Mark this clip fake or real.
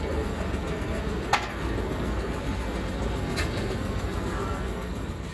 fake